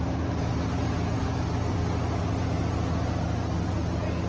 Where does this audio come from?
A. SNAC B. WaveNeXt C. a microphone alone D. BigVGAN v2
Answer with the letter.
C